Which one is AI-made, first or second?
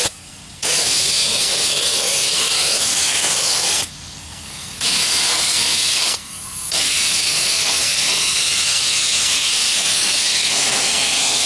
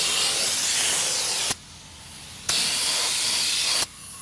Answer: first